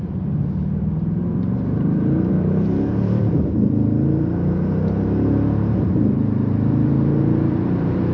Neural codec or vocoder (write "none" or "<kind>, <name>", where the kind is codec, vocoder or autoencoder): vocoder, BigVGAN v2